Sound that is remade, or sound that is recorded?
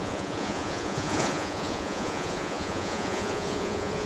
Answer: remade